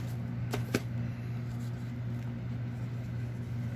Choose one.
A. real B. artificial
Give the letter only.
A